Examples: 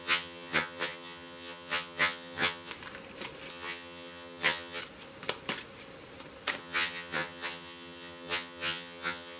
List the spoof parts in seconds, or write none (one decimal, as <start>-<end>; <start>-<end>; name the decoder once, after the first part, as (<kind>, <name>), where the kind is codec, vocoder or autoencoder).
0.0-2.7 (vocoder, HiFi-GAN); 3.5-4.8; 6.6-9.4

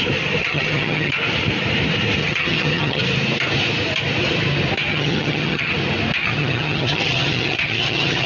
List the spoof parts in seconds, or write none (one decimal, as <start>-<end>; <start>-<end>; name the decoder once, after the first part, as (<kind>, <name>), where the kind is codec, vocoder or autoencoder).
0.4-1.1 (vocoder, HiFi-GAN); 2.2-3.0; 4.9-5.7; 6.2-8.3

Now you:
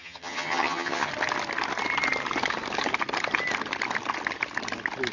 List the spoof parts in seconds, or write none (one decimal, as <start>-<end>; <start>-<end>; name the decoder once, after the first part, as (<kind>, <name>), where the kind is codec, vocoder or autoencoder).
0.0-1.1 (vocoder, HiFi-GAN)

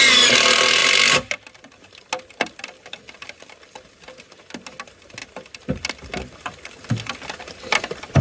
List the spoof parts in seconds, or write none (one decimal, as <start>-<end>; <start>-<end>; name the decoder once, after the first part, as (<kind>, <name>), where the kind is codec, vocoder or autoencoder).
none

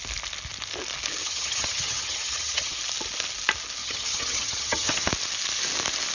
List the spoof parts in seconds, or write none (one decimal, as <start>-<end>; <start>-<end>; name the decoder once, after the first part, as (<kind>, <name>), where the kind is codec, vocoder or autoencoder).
1.2-2.8 (vocoder, HiFi-GAN); 3.8-5.1

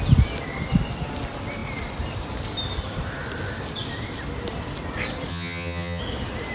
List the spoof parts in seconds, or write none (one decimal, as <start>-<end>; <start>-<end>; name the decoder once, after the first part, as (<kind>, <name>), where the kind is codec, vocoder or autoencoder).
5.3-6.0 (vocoder, HiFi-GAN)

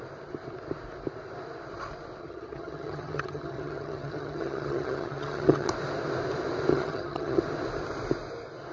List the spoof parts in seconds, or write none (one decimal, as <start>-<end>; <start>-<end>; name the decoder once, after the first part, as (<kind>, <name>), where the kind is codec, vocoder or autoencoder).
2.2-5.7 (vocoder, HiFi-GAN); 6.7-7.4